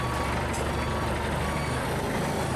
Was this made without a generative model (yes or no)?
yes